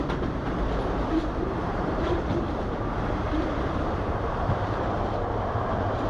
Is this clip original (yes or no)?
no